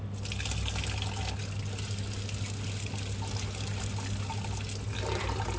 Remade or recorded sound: recorded